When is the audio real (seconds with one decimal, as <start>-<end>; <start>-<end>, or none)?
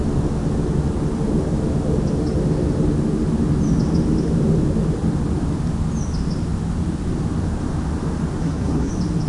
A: 0.0-8.4; 8.9-9.3